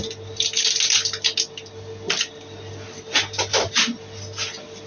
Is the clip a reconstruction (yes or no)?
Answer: no